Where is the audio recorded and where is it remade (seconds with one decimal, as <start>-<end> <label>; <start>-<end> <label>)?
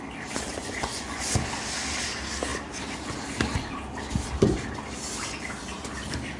0.0-0.6 recorded; 0.6-1.2 remade; 1.2-6.4 recorded